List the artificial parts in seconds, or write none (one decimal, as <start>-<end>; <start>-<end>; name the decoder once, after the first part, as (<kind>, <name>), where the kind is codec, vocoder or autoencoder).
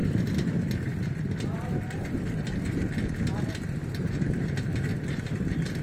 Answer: none